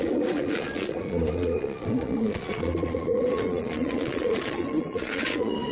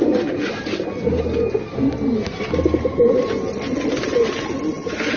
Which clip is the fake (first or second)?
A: first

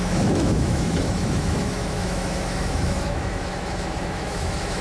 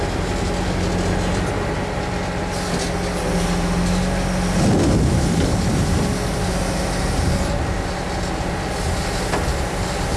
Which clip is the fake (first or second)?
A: first